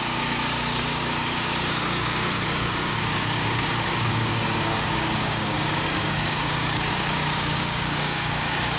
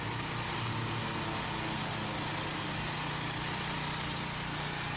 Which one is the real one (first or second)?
second